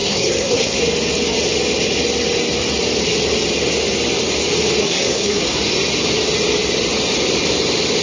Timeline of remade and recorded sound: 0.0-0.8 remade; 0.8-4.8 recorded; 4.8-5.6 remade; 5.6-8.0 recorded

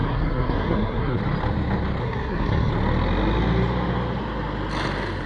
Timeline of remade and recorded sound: 0.0-1.2 remade; 1.2-2.0 recorded; 2.0-2.7 remade; 2.7-5.3 recorded

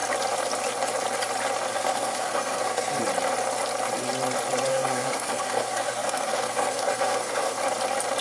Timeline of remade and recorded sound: 0.0-1.7 recorded; 1.7-3.0 remade; 3.0-4.7 recorded; 4.7-7.6 remade; 7.6-8.2 recorded

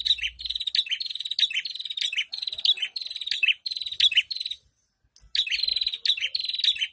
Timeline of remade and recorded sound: 0.0-6.9 recorded